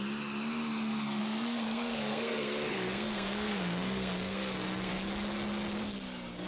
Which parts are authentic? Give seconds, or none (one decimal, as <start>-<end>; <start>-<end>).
0.0-1.2; 4.9-6.5